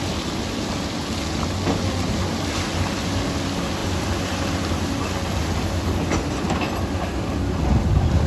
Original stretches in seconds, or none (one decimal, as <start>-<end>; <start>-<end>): 0.0-8.3

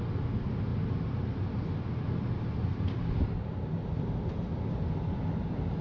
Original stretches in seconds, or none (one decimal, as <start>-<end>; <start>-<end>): 0.0-5.8

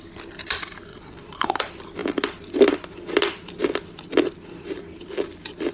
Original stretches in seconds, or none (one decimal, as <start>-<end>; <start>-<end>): 0.0-0.9; 1.5-5.7